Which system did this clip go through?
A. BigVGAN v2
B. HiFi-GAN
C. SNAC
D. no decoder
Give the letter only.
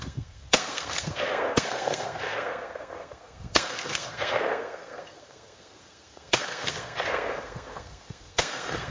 C